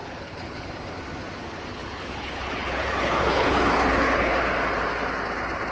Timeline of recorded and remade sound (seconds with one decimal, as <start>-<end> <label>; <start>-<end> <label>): 0.0-0.7 remade; 0.7-1.7 recorded; 1.7-4.4 remade; 4.4-5.7 recorded